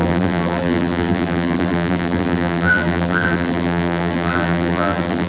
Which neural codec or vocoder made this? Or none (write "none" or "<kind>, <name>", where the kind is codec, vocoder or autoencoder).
vocoder, BigVGAN v2